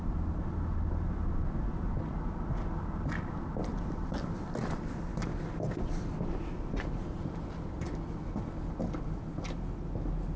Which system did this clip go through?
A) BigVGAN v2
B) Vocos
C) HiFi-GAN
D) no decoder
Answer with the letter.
D